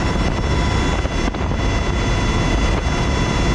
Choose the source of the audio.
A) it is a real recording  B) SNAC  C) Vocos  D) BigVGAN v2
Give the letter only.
A